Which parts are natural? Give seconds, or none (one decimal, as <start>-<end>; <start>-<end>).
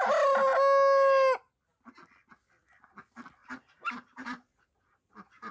0.0-3.4; 5.1-5.5